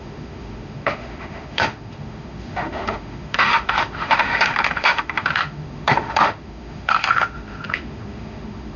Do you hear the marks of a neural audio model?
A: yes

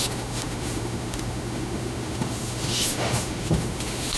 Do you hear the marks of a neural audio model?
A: yes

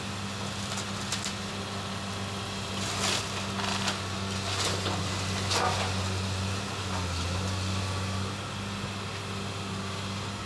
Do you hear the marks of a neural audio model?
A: no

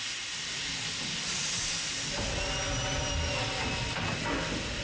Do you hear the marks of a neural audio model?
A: no